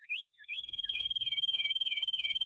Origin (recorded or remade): remade